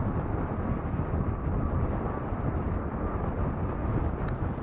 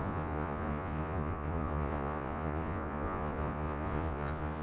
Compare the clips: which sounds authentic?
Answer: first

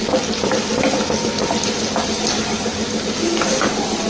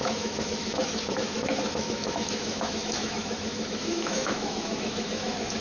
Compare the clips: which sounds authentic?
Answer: first